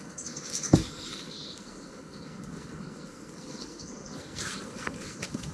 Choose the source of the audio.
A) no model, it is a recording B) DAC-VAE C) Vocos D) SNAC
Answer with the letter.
D